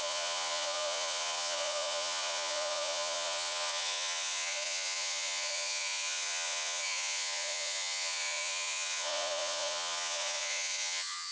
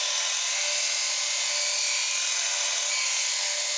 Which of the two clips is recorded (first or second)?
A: second